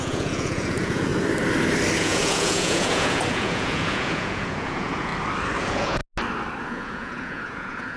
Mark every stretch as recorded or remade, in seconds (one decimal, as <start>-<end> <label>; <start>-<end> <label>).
0.0-1.1 remade; 1.1-2.0 recorded; 2.0-5.1 remade; 5.1-5.6 recorded; 5.6-6.0 remade; 6.0-6.6 recorded; 6.6-8.0 remade